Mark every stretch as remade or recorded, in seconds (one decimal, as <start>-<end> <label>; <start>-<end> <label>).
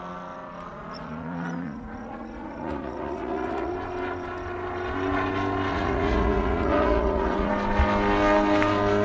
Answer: 0.0-0.7 recorded; 0.7-3.7 remade; 3.7-5.7 recorded; 5.7-7.5 remade; 7.5-9.0 recorded